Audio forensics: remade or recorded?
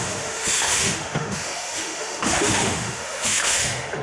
remade